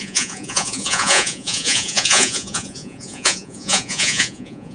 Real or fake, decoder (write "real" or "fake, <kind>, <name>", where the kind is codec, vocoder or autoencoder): fake, vocoder, Vocos